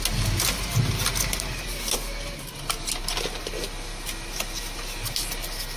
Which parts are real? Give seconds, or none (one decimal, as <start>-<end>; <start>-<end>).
0.0-5.8